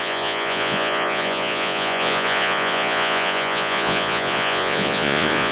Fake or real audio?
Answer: fake